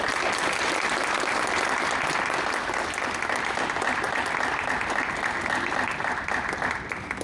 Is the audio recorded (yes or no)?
yes